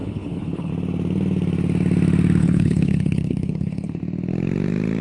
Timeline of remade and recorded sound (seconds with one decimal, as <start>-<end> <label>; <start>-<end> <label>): 0.0-0.7 remade; 0.7-2.4 recorded; 2.4-4.0 remade; 4.0-5.0 recorded

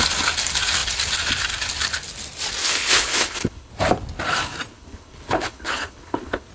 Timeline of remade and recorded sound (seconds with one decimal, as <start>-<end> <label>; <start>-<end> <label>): 0.0-2.6 recorded; 2.6-3.7 remade; 3.7-4.7 recorded; 4.7-6.5 remade